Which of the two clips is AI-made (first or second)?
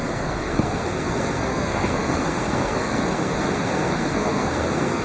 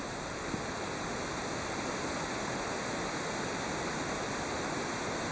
first